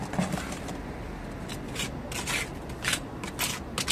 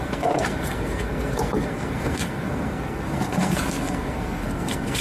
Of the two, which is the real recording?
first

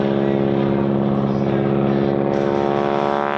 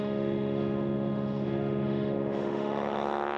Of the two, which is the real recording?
first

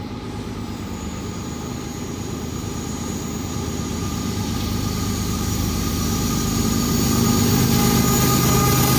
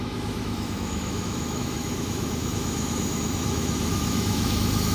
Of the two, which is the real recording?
first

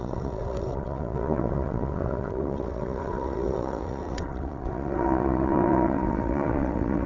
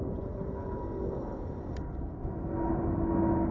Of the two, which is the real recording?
second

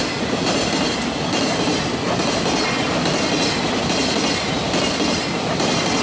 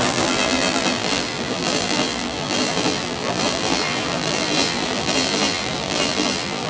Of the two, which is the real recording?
first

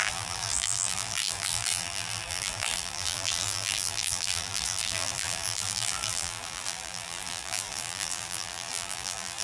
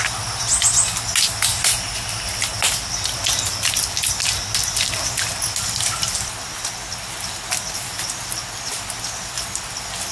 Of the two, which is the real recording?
second